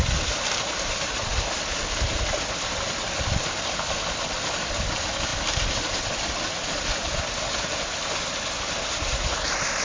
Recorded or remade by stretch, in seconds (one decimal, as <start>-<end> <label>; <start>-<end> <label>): 0.0-9.8 recorded